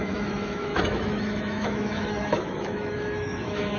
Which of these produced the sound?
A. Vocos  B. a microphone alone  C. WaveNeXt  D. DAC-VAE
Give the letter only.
D